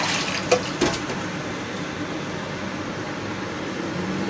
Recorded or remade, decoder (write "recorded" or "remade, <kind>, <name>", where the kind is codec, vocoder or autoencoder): recorded